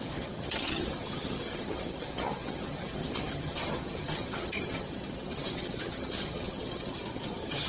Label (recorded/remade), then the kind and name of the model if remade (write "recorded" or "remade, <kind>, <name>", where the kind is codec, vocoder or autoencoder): remade, vocoder, HiFi-GAN